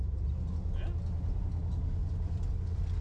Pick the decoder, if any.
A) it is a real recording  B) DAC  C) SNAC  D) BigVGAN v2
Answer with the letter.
A